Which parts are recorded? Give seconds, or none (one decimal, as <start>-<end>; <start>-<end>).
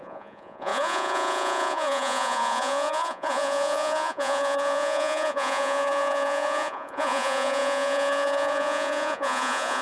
none